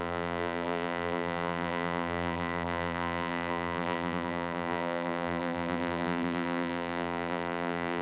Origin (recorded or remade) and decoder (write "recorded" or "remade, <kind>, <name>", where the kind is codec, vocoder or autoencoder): remade, vocoder, BigVGAN v2